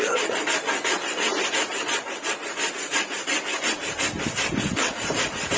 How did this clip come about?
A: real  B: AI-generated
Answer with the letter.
A